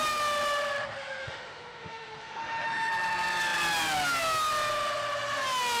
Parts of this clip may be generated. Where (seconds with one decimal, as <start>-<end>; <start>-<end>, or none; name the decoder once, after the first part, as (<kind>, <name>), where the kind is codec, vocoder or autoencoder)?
1.2-2.9 (autoencoder, DAC-VAE)